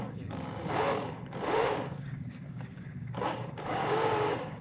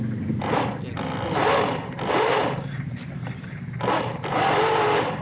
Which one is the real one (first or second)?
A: second